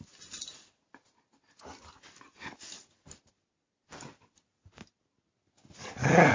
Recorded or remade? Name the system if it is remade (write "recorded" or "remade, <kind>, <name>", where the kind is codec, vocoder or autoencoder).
recorded